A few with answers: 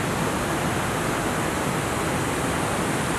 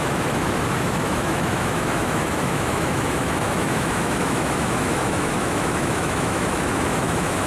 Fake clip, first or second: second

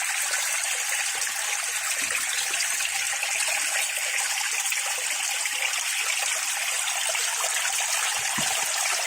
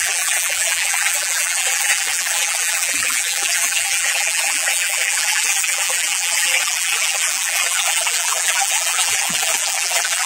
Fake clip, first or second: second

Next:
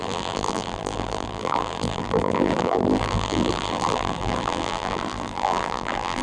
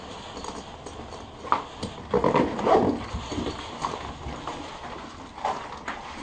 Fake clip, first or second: first